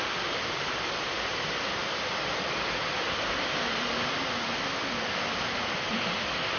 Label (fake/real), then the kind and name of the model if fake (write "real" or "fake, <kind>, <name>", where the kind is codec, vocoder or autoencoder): fake, vocoder, BigVGAN v2